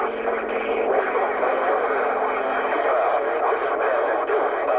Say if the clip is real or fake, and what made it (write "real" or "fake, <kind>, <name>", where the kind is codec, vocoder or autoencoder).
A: real